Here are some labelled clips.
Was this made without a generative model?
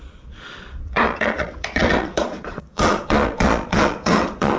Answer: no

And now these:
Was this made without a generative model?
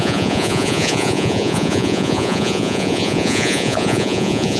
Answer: no